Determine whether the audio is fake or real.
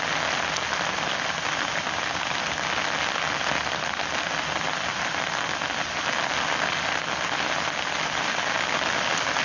real